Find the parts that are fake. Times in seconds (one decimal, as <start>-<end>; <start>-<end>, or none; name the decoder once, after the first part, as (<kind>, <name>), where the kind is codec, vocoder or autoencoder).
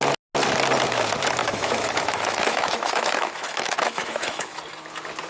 1.4-4.6 (autoencoder, DAC-VAE)